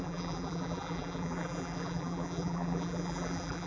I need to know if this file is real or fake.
fake